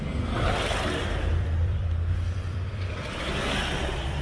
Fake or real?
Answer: fake